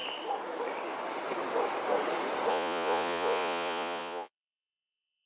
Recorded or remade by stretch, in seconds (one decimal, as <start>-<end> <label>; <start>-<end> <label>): 0.0-2.5 recorded; 2.5-5.3 remade